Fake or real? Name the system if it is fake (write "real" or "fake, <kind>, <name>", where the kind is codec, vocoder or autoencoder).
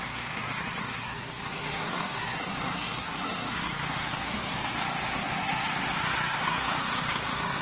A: fake, codec, SNAC